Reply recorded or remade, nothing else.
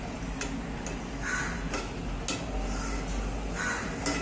recorded